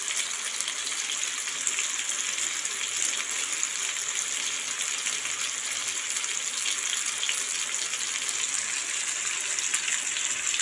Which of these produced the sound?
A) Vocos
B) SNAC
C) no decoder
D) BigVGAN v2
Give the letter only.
C